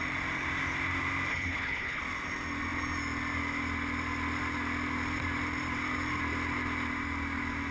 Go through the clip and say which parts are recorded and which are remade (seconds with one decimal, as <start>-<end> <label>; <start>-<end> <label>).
0.0-1.3 recorded; 1.3-2.0 remade; 2.0-7.7 recorded